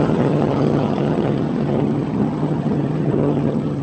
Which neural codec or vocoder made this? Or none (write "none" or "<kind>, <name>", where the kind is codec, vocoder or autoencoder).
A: vocoder, HiFi-GAN